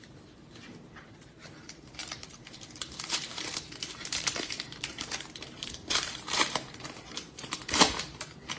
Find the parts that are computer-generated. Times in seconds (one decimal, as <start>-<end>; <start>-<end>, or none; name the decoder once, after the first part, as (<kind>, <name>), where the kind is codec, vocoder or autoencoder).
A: 0.0-8.6 (vocoder, BigVGAN v2)